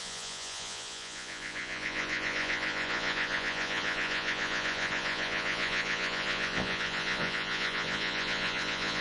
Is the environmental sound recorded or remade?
remade